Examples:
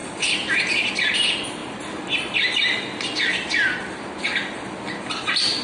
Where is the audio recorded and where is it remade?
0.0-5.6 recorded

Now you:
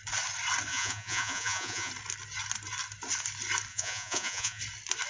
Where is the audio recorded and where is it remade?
0.0-0.7 recorded; 0.7-1.9 remade; 1.9-3.7 recorded; 3.7-4.6 remade; 4.6-5.1 recorded

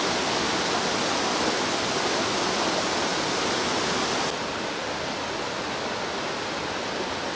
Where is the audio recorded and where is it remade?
0.0-7.4 recorded

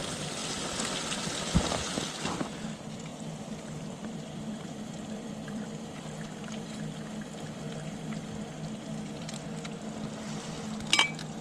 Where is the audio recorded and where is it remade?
0.0-0.4 recorded; 0.4-1.3 remade; 1.3-3.1 recorded; 3.1-5.9 remade; 5.9-11.4 recorded